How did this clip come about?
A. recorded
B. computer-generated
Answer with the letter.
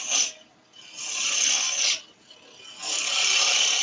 A